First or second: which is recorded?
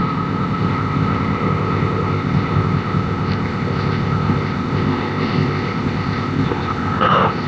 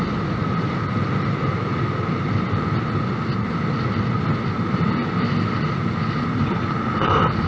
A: second